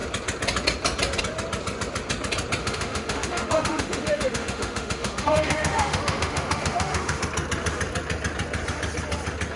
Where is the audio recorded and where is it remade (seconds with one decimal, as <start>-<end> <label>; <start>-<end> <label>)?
0.0-2.6 recorded; 2.6-7.2 remade; 7.2-9.6 recorded